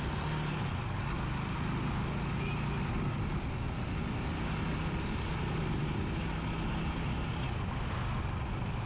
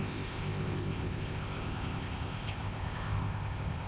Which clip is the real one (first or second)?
first